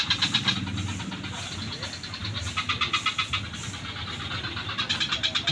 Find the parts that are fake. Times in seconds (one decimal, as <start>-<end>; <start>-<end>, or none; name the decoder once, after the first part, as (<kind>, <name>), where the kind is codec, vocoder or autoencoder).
none